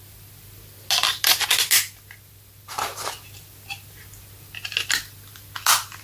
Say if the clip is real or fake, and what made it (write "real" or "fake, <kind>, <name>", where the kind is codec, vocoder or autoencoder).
real